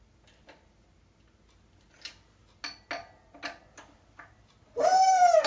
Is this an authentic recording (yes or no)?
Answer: yes